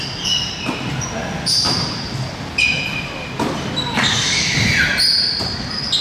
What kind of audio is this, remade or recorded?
recorded